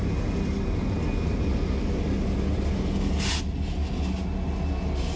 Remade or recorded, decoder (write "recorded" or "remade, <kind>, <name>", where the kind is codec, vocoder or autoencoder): recorded